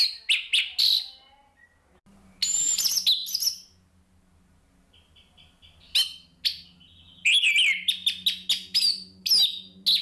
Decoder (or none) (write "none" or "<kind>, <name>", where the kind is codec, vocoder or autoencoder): none